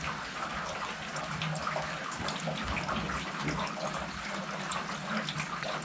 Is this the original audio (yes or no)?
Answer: yes